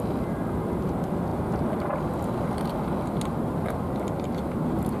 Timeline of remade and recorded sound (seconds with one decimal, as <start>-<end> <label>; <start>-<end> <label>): 0.0-5.0 recorded